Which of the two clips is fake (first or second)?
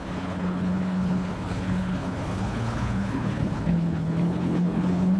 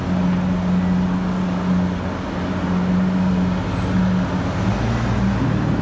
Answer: first